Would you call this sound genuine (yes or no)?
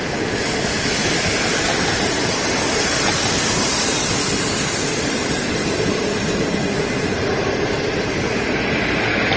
yes